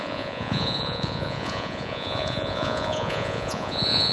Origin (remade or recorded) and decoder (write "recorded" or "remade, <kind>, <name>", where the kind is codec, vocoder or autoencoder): remade, vocoder, Vocos